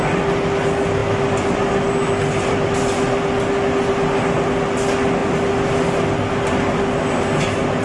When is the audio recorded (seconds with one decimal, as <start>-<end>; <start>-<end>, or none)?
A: 0.0-7.8